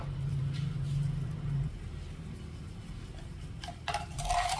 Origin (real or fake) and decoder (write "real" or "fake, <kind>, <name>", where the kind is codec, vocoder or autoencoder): fake, vocoder, BigVGAN v2